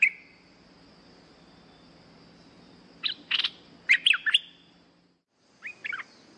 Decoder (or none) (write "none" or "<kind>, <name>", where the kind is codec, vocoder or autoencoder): none